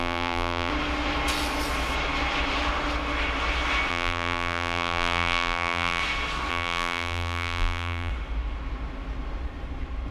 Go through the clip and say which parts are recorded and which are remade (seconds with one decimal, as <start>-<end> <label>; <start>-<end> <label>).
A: 0.0-0.7 remade; 0.7-3.9 recorded; 3.9-6.0 remade; 6.0-6.5 recorded; 6.5-8.1 remade; 8.1-10.1 recorded